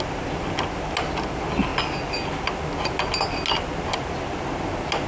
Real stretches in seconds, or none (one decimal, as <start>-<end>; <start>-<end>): 0.0-5.1